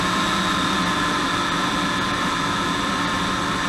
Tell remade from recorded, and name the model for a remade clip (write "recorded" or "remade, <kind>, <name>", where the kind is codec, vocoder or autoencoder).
recorded